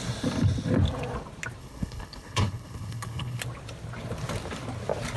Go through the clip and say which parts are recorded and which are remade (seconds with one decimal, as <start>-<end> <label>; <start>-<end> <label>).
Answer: 0.0-1.6 recorded; 1.6-3.4 remade; 3.4-5.2 recorded